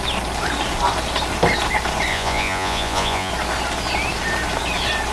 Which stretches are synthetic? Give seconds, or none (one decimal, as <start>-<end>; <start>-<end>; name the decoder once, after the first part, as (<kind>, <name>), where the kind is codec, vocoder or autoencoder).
2.1-3.3 (vocoder, Vocos)